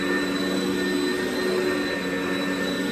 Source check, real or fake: real